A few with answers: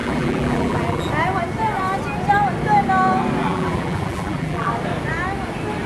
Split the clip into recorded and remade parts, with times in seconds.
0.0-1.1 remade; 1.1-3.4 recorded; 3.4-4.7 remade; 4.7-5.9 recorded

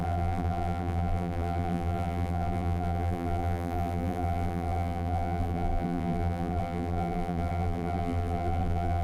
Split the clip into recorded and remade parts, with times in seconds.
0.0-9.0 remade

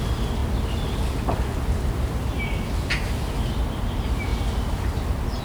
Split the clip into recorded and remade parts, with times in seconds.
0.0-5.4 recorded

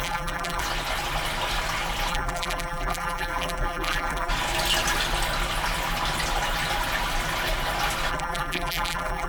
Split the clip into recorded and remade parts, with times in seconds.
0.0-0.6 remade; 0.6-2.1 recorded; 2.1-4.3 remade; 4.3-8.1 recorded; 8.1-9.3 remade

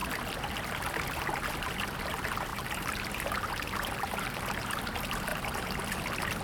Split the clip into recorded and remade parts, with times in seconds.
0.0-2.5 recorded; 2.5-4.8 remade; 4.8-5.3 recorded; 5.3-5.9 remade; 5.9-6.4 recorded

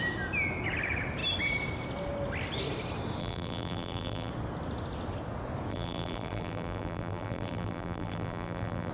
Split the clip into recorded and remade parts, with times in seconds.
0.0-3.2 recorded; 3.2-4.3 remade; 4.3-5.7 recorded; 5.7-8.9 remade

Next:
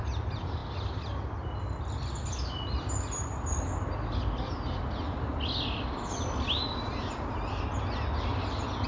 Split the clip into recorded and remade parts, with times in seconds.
0.0-8.9 recorded

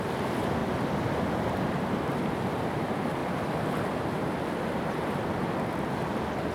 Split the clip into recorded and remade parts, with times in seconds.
0.0-0.6 remade; 0.6-1.2 recorded; 1.2-4.2 remade; 4.2-4.8 recorded; 4.8-6.5 remade